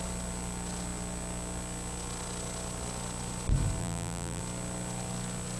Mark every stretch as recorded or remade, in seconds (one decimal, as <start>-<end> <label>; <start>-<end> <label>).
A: 0.0-3.8 recorded; 3.8-4.4 remade; 4.4-5.6 recorded